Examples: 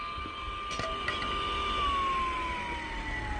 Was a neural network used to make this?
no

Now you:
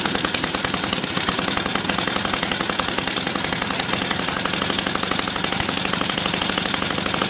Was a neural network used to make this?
yes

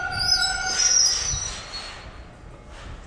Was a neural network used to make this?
no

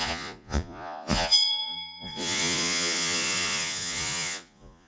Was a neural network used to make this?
yes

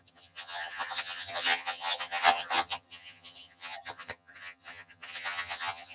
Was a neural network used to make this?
yes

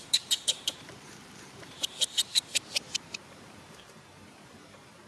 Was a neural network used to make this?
yes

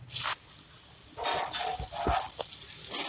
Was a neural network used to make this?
no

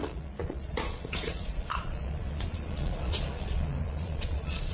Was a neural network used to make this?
yes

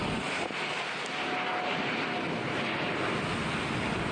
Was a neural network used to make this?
no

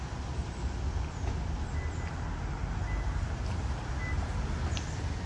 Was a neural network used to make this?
no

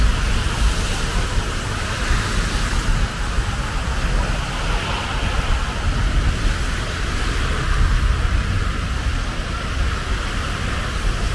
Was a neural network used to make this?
no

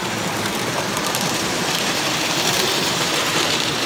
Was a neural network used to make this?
yes